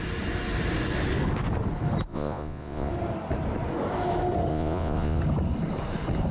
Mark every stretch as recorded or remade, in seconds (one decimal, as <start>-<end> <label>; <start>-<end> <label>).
0.0-2.1 recorded; 2.1-2.9 remade; 2.9-4.5 recorded; 4.5-5.2 remade; 5.2-6.3 recorded